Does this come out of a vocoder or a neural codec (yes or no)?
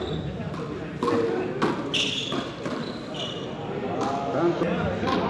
no